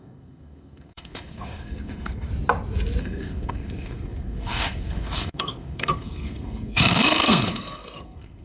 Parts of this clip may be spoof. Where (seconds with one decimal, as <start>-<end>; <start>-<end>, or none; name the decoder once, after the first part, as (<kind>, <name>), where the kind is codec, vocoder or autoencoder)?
0.0-2.3 (codec, SNAC); 3.0-8.4